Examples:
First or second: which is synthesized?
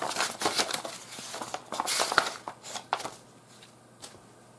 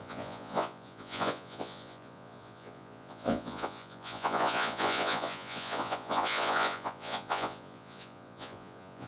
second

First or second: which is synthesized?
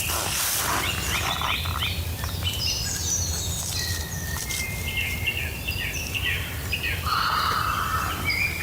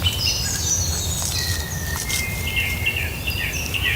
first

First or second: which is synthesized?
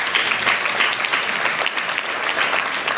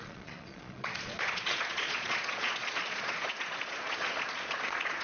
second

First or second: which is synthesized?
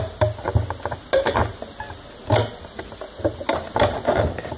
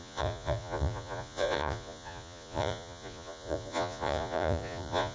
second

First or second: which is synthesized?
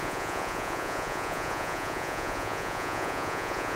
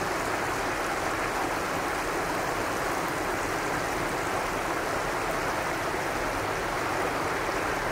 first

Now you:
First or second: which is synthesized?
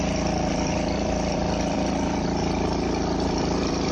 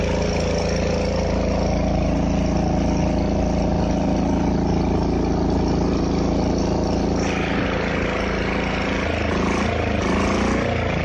first